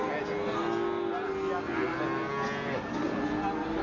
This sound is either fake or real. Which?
real